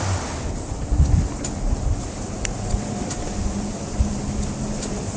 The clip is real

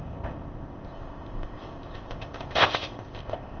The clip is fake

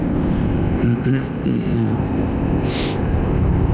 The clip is fake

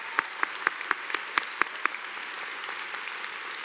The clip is real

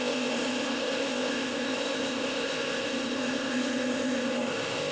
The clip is fake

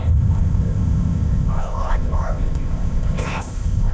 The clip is fake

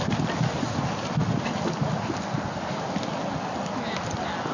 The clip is real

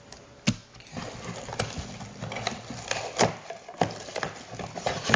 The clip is real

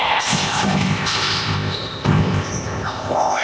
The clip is fake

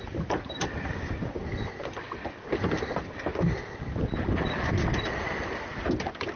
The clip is real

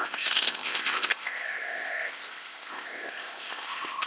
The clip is fake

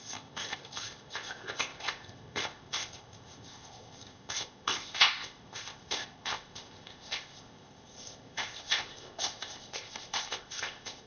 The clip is fake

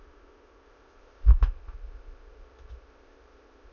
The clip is fake